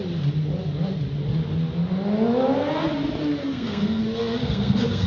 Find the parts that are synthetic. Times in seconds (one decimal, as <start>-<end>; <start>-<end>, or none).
3.4-4.0; 4.4-5.1

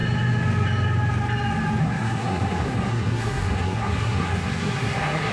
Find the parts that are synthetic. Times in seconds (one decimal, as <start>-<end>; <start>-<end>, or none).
1.8-5.3

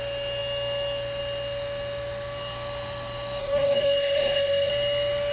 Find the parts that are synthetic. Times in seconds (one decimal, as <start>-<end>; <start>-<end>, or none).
3.4-4.7

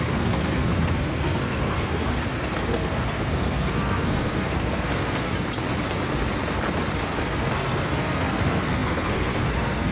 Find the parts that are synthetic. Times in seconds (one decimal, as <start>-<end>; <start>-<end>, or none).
0.0-5.3; 7.2-9.9